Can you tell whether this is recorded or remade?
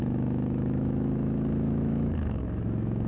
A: remade